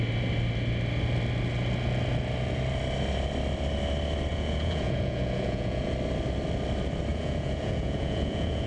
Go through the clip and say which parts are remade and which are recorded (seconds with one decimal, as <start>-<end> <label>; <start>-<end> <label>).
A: 0.0-4.3 recorded; 4.3-5.9 remade; 5.9-7.1 recorded; 7.1-8.7 remade